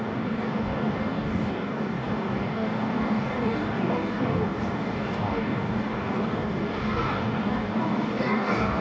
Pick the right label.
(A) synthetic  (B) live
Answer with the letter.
A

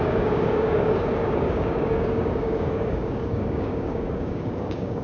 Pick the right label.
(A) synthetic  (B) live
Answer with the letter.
A